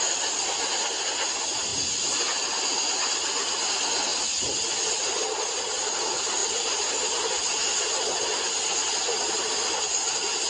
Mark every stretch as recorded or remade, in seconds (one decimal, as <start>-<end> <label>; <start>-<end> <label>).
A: 0.0-10.5 recorded